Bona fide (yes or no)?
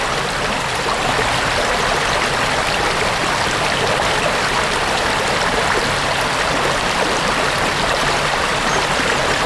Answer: yes